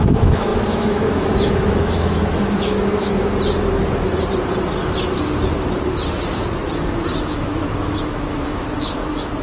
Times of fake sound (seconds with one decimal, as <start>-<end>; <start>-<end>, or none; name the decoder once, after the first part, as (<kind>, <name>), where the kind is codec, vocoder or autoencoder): 0.0-3.3 (autoencoder, DAC-VAE); 7.1-9.4